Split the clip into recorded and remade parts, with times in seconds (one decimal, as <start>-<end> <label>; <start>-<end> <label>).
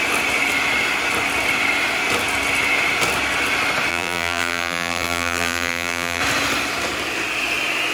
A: 0.0-3.9 recorded; 3.9-6.2 remade; 6.2-7.9 recorded